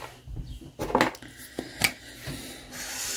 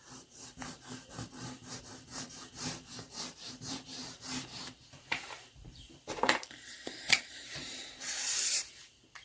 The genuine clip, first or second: first